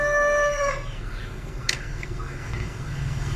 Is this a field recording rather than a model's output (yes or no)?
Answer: no